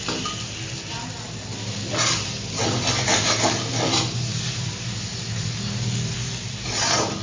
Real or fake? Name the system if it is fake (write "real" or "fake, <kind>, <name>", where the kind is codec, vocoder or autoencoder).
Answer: real